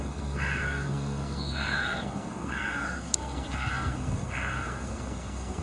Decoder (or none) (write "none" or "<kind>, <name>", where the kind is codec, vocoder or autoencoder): codec, SNAC